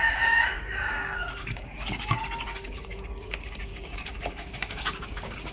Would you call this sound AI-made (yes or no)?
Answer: yes